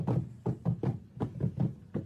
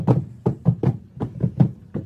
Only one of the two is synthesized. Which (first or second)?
second